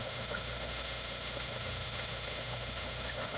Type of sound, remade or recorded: remade